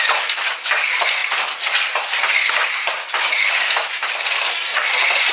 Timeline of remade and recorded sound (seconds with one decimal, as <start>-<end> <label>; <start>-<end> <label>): 0.0-5.3 recorded

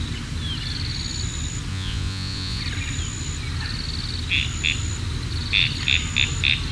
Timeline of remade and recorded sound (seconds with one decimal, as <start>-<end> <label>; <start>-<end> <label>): 0.0-1.7 recorded; 1.7-2.6 remade; 2.6-6.7 recorded

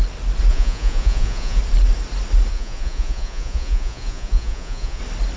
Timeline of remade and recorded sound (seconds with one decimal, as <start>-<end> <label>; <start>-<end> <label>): 0.0-0.5 recorded; 0.5-1.6 remade; 1.6-2.5 recorded; 2.5-5.0 remade; 5.0-5.4 recorded

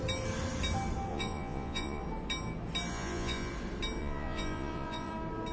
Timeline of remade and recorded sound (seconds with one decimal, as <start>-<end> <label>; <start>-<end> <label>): 0.0-1.1 recorded; 1.1-2.0 remade; 2.0-2.9 recorded; 2.9-3.5 remade; 3.5-4.0 recorded; 4.0-5.1 remade; 5.1-5.5 recorded

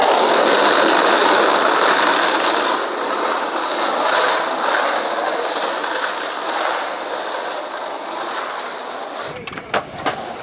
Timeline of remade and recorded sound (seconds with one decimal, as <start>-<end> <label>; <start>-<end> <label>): 0.0-10.4 recorded

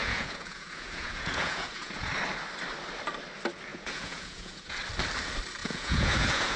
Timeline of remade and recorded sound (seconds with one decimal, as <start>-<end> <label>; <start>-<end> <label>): 0.0-2.1 remade; 2.1-3.7 recorded; 3.7-4.8 remade; 4.8-5.6 recorded; 5.6-6.6 remade